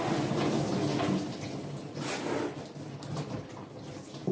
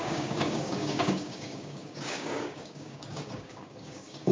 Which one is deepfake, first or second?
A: second